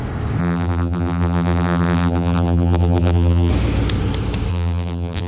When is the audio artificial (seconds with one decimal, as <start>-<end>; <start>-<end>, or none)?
0.4-3.5; 4.5-5.3